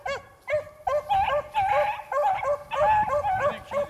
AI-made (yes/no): no